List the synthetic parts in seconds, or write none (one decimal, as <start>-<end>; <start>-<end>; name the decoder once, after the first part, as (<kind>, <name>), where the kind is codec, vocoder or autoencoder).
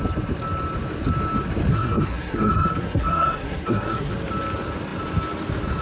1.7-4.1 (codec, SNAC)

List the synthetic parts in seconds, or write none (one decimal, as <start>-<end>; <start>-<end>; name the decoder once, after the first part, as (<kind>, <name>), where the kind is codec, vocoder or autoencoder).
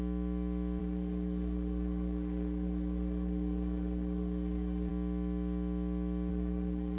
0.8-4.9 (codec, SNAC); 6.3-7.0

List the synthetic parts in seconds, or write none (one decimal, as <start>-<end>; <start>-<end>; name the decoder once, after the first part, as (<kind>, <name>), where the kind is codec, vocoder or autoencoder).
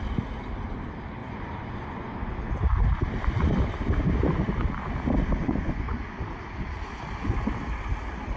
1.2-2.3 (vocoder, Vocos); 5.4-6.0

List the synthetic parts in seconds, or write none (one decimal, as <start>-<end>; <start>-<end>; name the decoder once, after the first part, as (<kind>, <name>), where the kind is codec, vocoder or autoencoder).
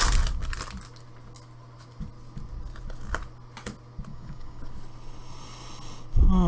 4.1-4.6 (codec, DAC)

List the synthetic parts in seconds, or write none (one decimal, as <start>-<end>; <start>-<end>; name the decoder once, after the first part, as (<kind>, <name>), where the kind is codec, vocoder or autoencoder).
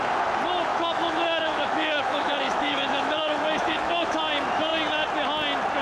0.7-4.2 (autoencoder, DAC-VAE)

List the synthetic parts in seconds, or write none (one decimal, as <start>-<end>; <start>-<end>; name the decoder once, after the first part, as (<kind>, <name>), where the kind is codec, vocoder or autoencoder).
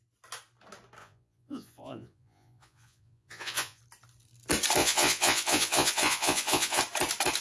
1.0-3.8 (vocoder, Vocos); 4.8-6.8